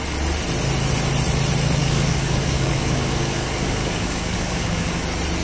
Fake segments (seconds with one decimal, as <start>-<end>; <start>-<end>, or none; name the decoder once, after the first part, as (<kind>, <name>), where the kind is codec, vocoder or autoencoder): 1.8-5.0 (codec, DAC)